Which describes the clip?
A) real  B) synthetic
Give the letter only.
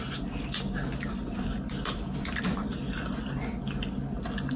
A